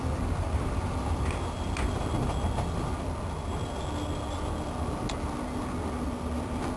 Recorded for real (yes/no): yes